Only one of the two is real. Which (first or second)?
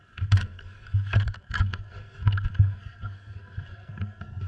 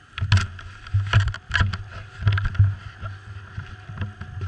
second